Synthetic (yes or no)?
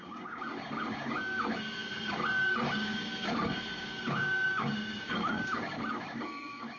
yes